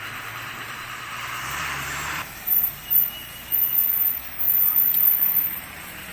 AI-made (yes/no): yes